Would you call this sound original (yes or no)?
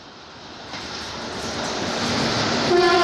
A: yes